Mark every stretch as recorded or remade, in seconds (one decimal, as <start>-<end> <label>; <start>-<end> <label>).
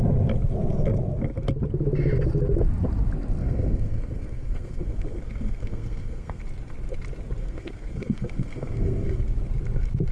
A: 0.0-3.4 recorded; 3.4-6.4 remade; 6.4-7.4 recorded; 7.4-9.2 remade; 9.2-10.1 recorded